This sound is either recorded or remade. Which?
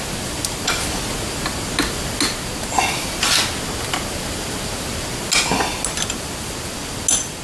recorded